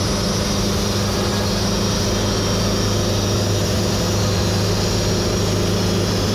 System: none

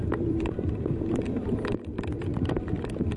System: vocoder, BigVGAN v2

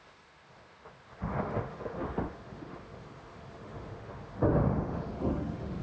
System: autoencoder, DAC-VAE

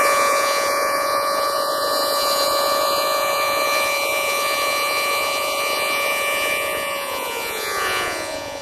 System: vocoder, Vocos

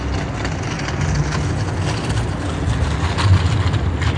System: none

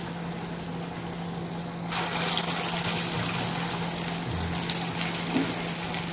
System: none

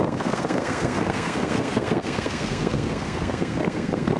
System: codec, SNAC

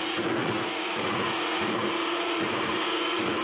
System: vocoder, Vocos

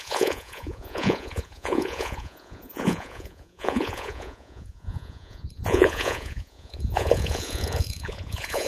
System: vocoder, Vocos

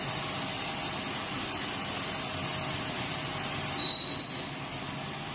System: none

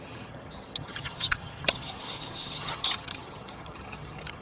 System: vocoder, HiFi-GAN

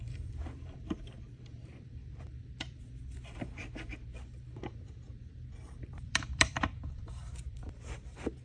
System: vocoder, BigVGAN v2